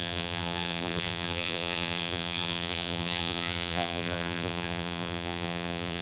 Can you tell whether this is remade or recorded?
remade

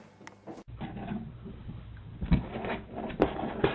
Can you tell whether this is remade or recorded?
recorded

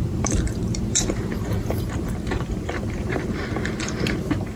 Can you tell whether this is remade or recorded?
remade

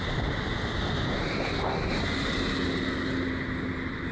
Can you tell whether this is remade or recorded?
recorded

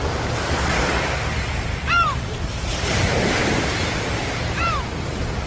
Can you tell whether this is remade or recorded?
remade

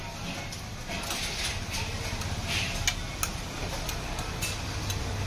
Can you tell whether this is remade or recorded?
recorded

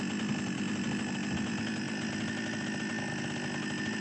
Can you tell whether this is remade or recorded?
recorded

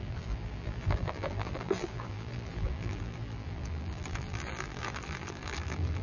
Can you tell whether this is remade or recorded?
remade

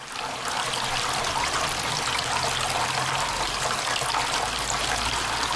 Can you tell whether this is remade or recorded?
recorded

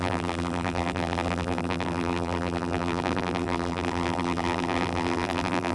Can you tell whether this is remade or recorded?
remade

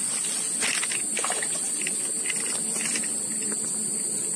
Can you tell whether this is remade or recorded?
recorded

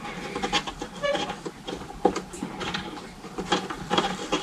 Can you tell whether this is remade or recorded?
recorded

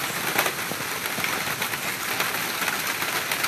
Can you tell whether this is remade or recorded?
recorded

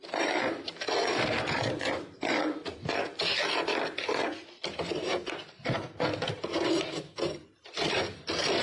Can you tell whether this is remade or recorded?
remade